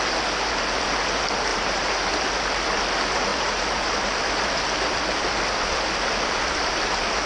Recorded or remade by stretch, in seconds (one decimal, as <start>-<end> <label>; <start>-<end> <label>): 0.0-1.5 recorded; 1.5-2.1 remade; 2.1-3.3 recorded; 3.3-4.2 remade; 4.2-7.3 recorded